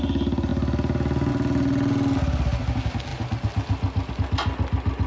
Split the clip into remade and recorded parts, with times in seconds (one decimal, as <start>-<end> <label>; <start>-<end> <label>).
0.0-5.1 recorded